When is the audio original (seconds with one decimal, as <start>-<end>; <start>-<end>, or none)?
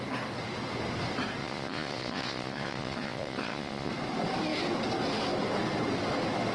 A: 0.0-1.4; 3.9-6.5